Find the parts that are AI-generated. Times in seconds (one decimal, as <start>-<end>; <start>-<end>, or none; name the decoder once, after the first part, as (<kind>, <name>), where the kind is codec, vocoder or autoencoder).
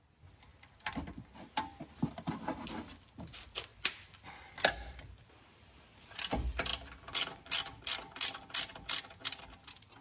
none